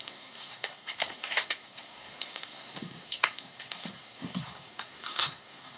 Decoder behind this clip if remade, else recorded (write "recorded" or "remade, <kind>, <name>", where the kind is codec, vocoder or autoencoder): remade, codec, SNAC